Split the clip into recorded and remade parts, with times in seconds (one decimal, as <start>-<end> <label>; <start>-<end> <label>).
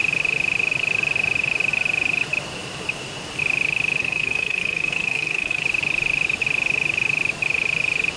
0.0-4.0 recorded; 4.0-5.6 remade; 5.6-8.2 recorded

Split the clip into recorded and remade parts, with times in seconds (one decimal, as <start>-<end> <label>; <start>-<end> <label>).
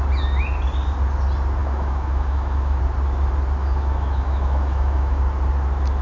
0.0-1.6 recorded; 1.6-2.8 remade; 2.8-3.6 recorded; 3.6-5.2 remade; 5.2-6.0 recorded